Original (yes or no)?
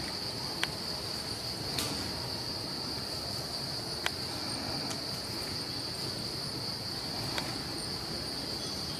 yes